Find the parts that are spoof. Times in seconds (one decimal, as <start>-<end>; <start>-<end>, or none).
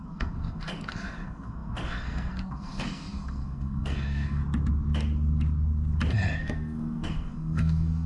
0.0-4.4; 6.4-8.1